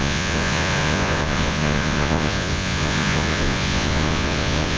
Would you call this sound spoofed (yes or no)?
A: yes